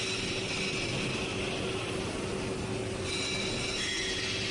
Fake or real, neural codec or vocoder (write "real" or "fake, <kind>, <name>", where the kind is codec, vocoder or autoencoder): real